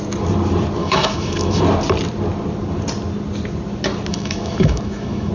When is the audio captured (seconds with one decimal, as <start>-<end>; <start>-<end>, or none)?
0.0-0.8; 1.6-4.1